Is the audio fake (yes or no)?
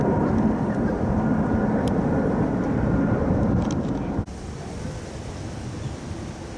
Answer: no